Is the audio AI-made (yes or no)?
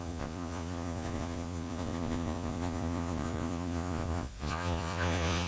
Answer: yes